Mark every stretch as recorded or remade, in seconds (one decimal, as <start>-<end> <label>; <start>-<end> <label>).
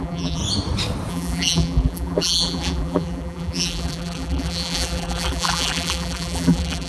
0.0-0.4 remade; 0.4-1.1 recorded; 1.1-6.9 remade